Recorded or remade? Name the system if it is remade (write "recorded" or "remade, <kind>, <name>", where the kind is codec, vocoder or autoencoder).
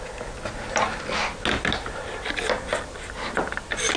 recorded